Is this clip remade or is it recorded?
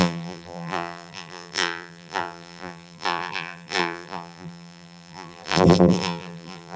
remade